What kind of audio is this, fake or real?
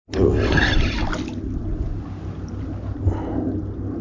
real